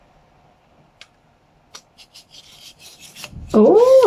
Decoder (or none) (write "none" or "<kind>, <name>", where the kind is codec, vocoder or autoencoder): none